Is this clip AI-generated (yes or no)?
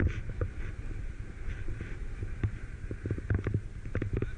no